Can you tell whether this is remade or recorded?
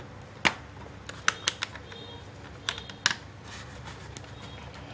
recorded